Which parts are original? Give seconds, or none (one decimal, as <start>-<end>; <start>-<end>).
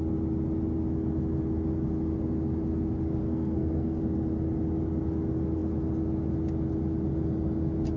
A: 0.0-3.2; 4.0-8.0